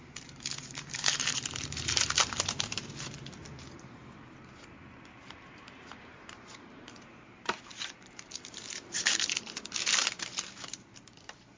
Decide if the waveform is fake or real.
fake